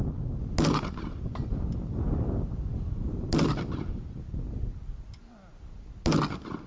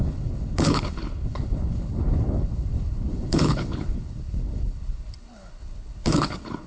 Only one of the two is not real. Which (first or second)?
second